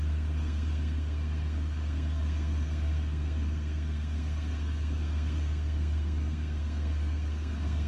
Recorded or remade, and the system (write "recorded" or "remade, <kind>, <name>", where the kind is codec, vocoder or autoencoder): remade, codec, SNAC